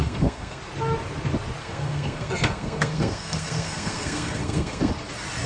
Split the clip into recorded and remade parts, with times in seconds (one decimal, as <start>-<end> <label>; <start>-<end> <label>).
0.0-0.6 remade; 0.6-1.6 recorded; 1.6-4.9 remade; 4.9-5.5 recorded